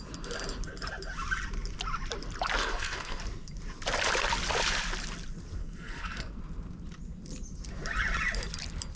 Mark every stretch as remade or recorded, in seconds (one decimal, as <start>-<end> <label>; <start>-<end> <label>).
0.0-2.6 recorded; 2.6-3.2 remade; 3.2-5.6 recorded; 5.6-6.4 remade; 6.4-9.0 recorded